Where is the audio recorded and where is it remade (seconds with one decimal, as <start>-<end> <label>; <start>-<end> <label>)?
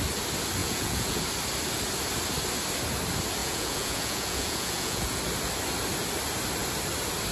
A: 0.0-0.6 recorded; 0.6-1.2 remade; 1.2-3.4 recorded; 3.4-5.2 remade; 5.2-7.3 recorded